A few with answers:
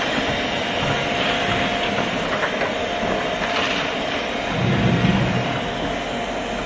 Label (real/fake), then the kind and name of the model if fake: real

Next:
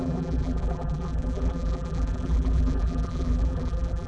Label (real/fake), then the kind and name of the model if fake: fake, vocoder, BigVGAN v2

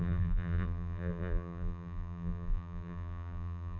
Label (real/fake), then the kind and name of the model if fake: fake, vocoder, BigVGAN v2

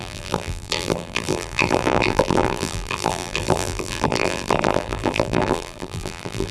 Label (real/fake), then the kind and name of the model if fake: fake, vocoder, BigVGAN v2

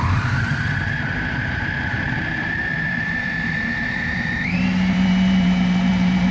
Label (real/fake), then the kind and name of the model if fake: fake, vocoder, BigVGAN v2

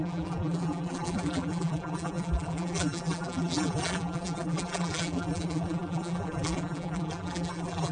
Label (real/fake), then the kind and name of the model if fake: fake, vocoder, BigVGAN v2